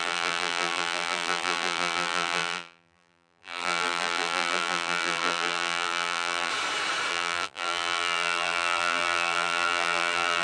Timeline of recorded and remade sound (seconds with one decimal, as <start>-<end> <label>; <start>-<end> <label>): 0.0-6.5 remade; 6.5-7.1 recorded; 7.1-10.4 remade

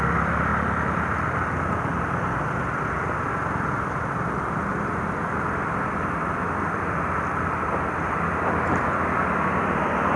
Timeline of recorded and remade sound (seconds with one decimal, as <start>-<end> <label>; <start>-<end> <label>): 0.0-0.5 remade; 0.5-4.1 recorded; 4.1-10.2 remade

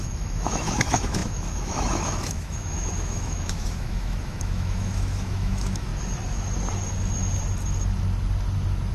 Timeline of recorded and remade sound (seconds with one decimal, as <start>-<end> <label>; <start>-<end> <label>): 0.0-5.9 remade; 5.9-8.9 recorded

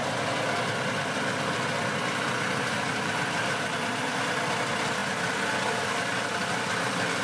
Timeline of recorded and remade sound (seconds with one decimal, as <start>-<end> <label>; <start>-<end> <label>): 0.0-7.2 recorded

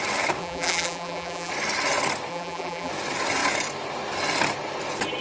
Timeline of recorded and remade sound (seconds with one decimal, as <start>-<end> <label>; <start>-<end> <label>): 0.0-0.4 recorded; 0.4-1.5 remade; 1.5-2.3 recorded; 2.3-2.9 remade; 2.9-5.2 recorded

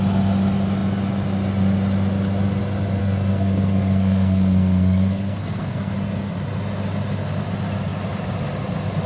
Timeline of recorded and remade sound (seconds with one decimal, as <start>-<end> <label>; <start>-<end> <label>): 0.0-3.0 recorded; 3.0-5.9 remade; 5.9-9.1 recorded

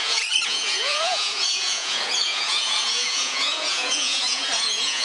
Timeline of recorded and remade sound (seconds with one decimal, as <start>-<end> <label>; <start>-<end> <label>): 0.0-5.0 remade